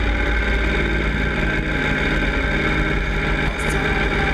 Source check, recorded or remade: recorded